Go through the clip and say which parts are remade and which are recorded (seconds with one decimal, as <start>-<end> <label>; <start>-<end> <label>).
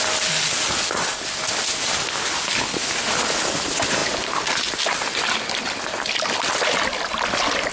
0.0-7.7 recorded